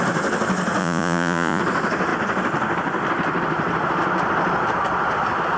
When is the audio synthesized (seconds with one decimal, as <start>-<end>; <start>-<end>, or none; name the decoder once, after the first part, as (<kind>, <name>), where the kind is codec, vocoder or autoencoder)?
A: 0.8-1.6 (vocoder, Vocos)